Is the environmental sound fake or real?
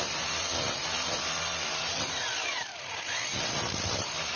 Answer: real